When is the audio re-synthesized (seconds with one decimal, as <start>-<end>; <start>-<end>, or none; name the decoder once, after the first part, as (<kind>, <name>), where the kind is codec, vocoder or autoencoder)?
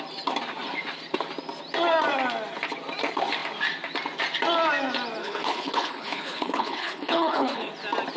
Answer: 5.2-7.7 (codec, HILCodec)